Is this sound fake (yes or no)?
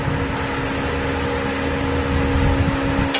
no